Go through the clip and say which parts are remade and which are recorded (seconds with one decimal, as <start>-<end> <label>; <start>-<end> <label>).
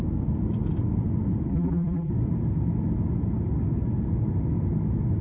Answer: 0.0-1.5 recorded; 1.5-2.1 remade; 2.1-5.2 recorded